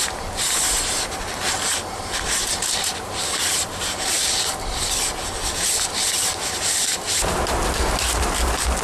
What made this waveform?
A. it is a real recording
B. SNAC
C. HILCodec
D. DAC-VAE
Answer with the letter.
A